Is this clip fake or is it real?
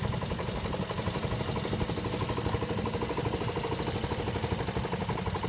real